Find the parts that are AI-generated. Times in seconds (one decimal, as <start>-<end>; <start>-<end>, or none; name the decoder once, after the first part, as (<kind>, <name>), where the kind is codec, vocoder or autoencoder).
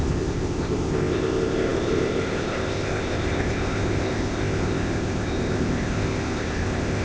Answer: 0.0-7.0 (codec, ZipCodec)